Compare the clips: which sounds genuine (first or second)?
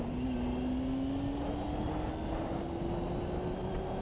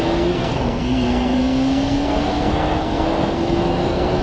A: first